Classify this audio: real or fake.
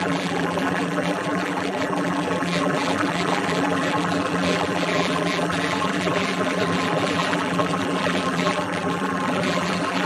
fake